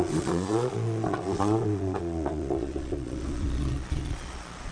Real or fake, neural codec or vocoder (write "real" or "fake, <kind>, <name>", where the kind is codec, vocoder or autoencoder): fake, vocoder, Vocos